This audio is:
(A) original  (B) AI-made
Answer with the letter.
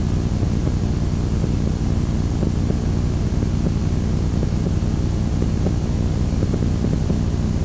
A